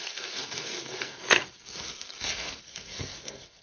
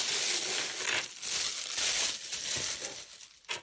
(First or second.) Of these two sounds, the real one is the second